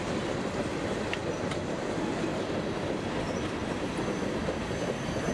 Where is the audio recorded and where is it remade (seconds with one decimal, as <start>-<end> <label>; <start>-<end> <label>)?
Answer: 0.0-5.3 recorded